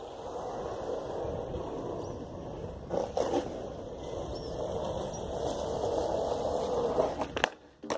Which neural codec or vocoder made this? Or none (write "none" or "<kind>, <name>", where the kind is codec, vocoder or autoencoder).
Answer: none